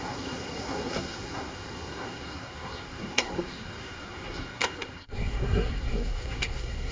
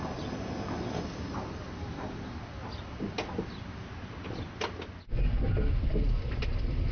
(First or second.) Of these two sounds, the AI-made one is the first